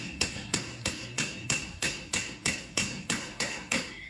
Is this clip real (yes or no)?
no